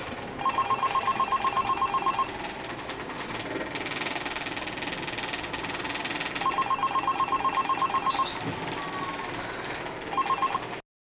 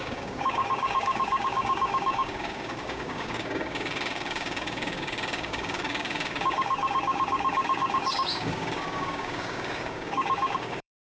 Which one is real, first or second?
first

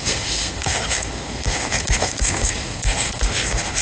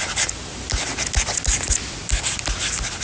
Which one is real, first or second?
second